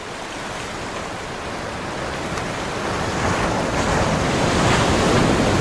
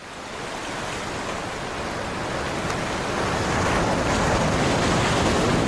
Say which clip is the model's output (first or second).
first